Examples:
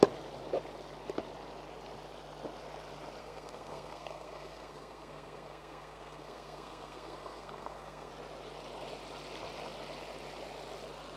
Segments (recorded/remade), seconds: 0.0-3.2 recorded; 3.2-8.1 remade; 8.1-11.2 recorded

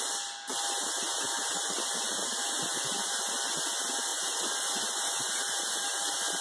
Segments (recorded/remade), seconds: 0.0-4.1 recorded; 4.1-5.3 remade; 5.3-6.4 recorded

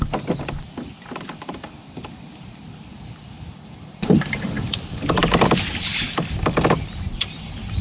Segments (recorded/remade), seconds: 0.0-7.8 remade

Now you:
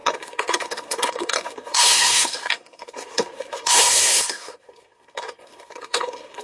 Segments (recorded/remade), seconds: 0.0-6.4 remade